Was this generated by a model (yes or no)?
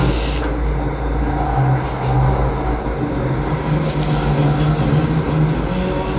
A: no